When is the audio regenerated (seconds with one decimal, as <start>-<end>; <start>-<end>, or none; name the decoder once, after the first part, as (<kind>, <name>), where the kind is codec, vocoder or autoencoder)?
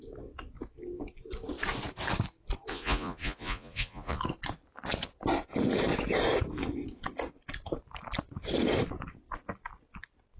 2.7-4.2 (vocoder, Vocos)